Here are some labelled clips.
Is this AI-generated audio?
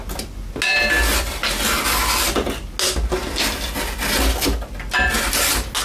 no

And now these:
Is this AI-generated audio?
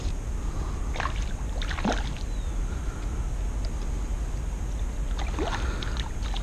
no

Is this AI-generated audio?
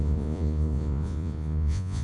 yes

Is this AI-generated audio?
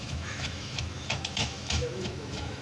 yes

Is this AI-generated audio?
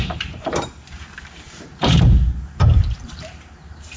yes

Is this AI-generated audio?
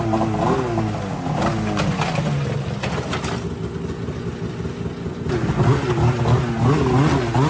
no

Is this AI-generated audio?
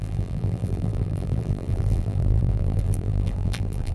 yes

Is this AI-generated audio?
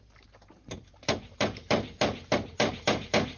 yes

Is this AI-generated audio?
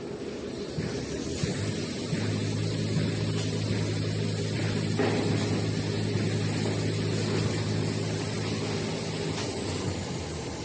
no